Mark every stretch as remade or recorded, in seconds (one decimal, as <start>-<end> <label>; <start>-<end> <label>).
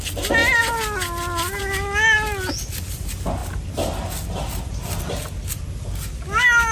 0.0-6.7 recorded